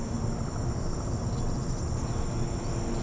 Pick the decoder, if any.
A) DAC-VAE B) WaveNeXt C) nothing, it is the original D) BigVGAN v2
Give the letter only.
C